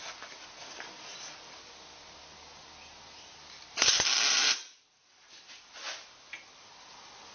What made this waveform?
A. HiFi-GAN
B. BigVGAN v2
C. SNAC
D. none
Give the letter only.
D